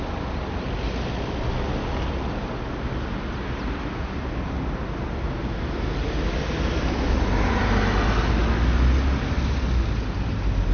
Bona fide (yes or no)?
yes